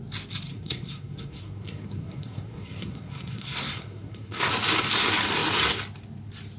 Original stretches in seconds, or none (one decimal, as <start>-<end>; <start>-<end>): 0.0-0.5; 4.5-6.6